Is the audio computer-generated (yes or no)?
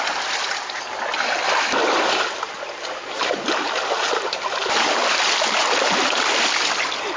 no